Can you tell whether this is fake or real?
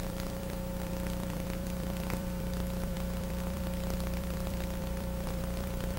fake